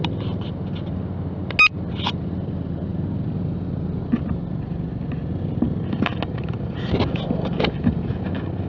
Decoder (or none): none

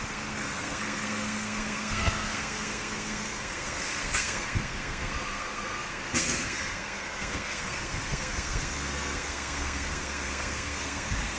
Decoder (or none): codec, SNAC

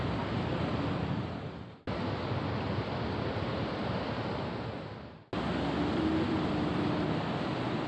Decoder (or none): none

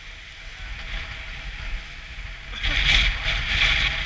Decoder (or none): none